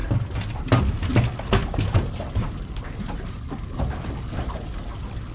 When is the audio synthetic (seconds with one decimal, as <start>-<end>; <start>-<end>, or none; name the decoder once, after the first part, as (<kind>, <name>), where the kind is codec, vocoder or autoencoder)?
1.6-3.8 (vocoder, BigVGAN v2)